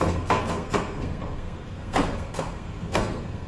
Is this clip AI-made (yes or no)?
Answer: yes